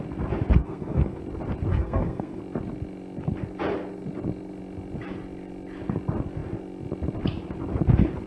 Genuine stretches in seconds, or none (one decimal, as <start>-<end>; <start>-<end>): 0.0-0.6; 1.2-1.7; 2.4-8.3

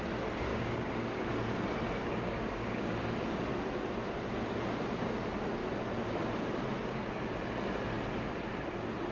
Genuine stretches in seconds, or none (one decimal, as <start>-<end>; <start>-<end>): 0.0-0.5; 1.4-2.0; 3.4-9.1

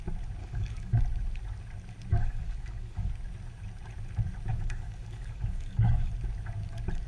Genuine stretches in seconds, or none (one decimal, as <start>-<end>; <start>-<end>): 0.0-0.4; 1.0-2.1; 3.1-4.5; 6.1-7.1

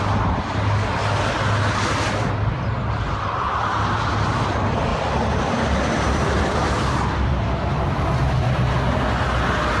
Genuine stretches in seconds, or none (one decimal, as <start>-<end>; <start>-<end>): 0.0-4.9; 6.7-9.8

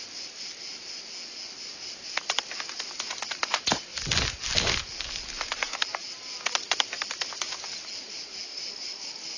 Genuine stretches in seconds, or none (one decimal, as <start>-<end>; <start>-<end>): 0.0-9.4

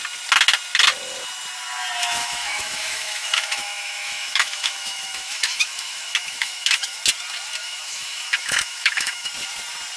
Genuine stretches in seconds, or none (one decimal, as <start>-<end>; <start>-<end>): 0.0-2.0; 7.0-7.6; 9.3-10.0

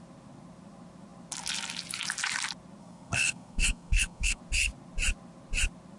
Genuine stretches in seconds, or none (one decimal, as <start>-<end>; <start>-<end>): 0.0-2.8; 4.4-6.0

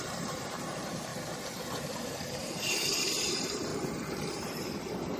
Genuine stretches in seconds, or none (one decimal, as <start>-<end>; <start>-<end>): 1.1-2.1; 3.7-4.2